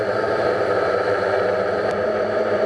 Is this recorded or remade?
remade